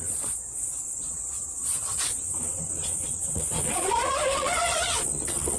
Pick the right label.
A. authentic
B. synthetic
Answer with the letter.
B